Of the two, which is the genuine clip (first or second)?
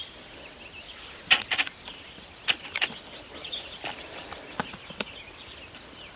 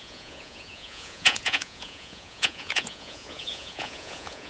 first